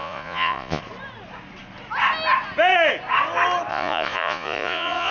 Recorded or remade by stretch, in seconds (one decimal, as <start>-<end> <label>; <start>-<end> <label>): 0.0-0.8 remade; 0.8-3.7 recorded; 3.7-5.1 remade